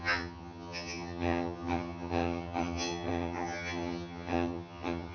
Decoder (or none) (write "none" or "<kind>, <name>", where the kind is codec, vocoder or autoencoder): vocoder, HiFi-GAN